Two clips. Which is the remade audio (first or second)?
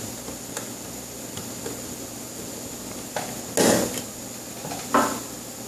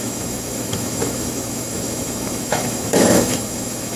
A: second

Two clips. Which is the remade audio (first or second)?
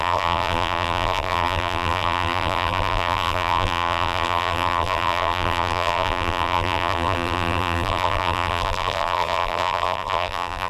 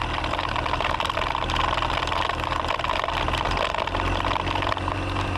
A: first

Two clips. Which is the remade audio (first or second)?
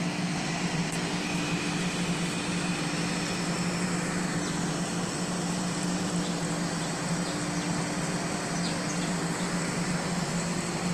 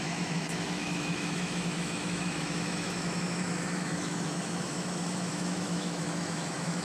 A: second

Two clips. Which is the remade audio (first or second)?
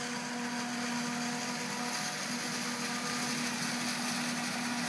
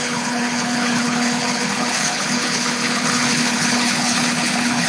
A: second